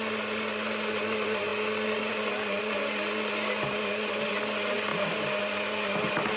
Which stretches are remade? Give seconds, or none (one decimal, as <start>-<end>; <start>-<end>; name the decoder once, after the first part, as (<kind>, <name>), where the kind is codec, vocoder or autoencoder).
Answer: none